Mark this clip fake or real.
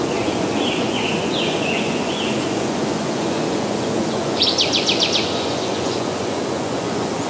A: fake